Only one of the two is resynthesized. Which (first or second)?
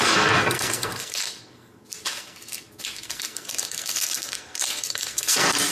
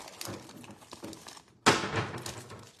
first